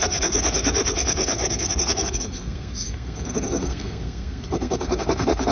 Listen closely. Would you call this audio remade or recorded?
remade